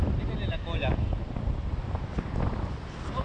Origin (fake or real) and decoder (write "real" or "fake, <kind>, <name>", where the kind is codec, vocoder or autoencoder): real